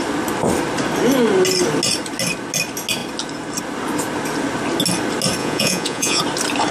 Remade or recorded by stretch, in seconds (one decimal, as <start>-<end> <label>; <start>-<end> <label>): 0.0-5.4 recorded; 5.4-6.2 remade; 6.2-6.7 recorded